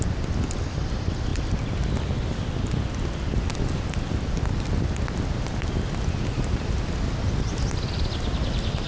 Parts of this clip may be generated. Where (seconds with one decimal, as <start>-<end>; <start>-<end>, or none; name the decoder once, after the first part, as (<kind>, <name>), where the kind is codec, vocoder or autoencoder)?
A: none